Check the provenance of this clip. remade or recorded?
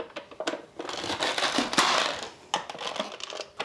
recorded